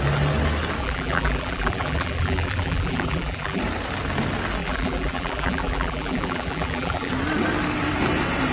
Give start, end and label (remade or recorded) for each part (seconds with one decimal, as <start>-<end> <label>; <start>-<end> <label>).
0.0-0.8 recorded; 0.8-3.6 remade; 3.6-4.6 recorded; 4.6-7.1 remade; 7.1-8.5 recorded